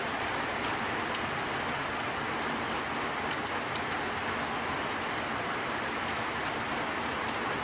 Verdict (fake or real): real